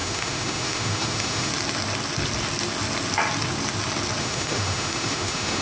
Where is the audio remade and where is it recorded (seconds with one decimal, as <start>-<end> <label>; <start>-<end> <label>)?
0.0-1.5 remade; 1.5-4.2 recorded; 4.2-5.6 remade

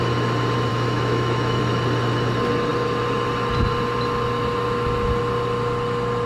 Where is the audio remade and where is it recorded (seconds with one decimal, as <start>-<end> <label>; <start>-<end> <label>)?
0.0-0.7 recorded; 0.7-1.6 remade; 1.6-6.3 recorded

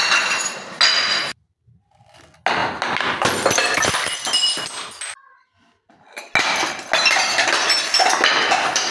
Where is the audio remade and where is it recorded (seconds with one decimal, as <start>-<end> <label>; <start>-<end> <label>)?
0.0-8.9 recorded

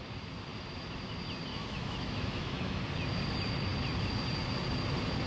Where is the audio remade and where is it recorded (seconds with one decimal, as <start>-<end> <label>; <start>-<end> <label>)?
0.0-1.5 recorded; 1.5-2.8 remade; 2.8-5.3 recorded

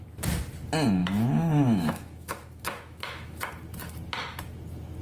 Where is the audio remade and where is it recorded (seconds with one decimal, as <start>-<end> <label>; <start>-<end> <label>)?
0.0-1.0 recorded; 1.0-3.5 remade; 3.5-5.0 recorded

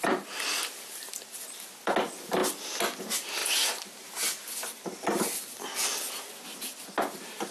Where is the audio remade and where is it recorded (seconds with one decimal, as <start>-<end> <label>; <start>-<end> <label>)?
0.0-7.5 recorded

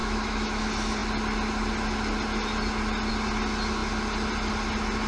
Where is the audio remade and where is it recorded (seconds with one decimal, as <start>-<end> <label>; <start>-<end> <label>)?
0.0-0.6 remade; 0.6-5.1 recorded

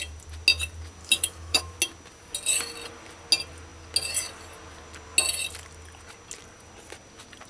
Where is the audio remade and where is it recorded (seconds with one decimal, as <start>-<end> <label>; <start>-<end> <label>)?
0.0-1.0 recorded; 1.0-1.6 remade; 1.6-7.5 recorded